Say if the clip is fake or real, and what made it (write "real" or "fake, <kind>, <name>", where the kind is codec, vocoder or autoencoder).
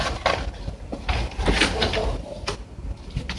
real